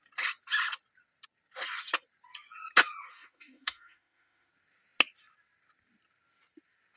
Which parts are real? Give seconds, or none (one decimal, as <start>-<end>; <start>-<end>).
0.0-3.1; 4.5-7.0